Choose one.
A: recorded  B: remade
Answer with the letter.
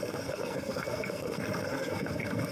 B